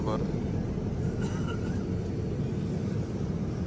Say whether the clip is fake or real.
real